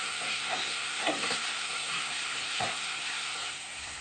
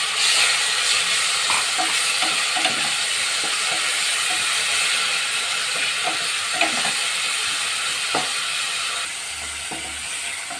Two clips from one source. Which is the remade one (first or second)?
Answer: first